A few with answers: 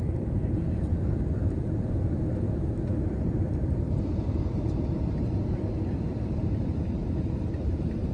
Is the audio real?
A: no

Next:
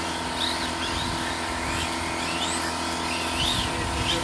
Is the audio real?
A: yes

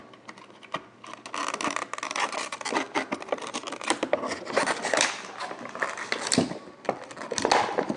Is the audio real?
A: yes